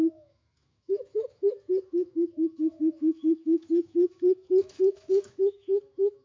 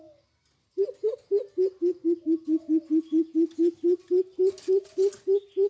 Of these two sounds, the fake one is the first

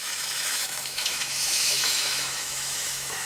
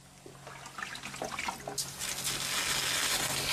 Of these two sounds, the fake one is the first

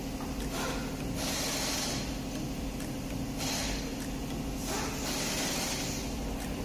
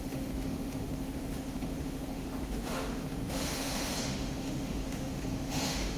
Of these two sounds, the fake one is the second